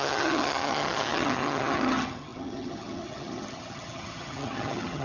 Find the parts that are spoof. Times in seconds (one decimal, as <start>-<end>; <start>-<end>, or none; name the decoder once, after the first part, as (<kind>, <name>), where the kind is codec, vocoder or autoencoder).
0.0-5.0 (vocoder, HiFi-GAN)